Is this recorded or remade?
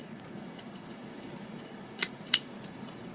remade